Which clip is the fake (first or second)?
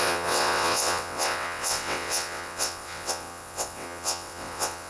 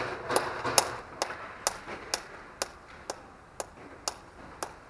first